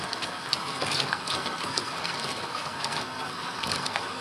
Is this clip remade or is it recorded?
remade